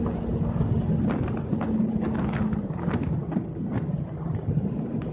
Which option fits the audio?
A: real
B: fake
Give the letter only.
A